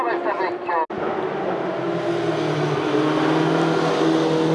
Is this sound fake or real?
real